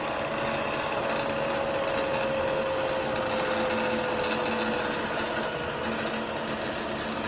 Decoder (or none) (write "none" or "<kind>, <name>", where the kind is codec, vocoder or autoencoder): none